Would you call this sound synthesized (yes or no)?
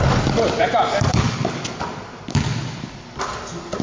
no